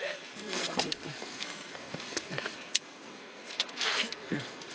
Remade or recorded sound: remade